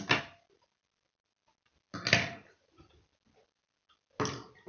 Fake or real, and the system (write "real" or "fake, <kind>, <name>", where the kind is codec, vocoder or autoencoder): real